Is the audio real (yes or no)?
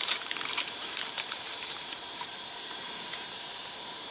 no